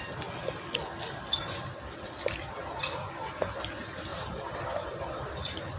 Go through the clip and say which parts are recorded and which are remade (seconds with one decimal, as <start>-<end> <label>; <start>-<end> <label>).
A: 0.0-4.1 recorded; 4.1-5.8 remade